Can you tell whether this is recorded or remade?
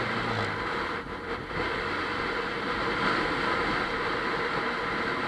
recorded